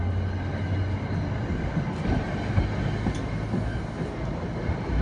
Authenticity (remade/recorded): recorded